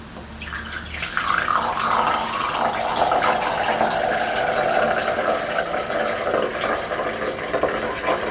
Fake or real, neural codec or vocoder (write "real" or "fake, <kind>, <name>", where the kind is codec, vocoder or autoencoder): real